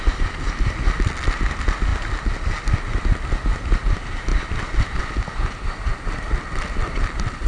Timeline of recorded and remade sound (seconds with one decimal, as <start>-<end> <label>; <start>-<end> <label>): 0.0-7.5 recorded